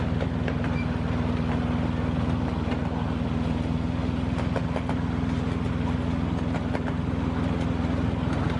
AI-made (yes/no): no